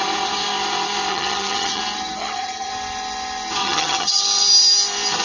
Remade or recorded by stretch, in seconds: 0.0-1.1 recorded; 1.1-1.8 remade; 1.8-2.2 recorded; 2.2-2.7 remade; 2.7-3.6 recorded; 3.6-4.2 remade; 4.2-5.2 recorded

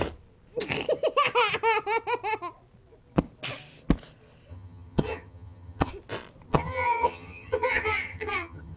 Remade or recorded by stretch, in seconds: 0.0-4.5 recorded; 4.5-5.9 remade; 5.9-6.5 recorded; 6.5-8.8 remade

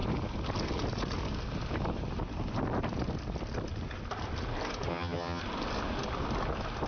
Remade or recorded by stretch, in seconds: 0.0-4.9 recorded; 4.9-5.4 remade; 5.4-6.9 recorded

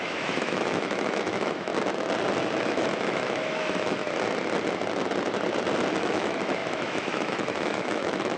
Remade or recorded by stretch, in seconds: 0.0-1.7 remade; 1.7-2.6 recorded; 2.6-4.0 remade; 4.0-6.0 recorded; 6.0-8.4 remade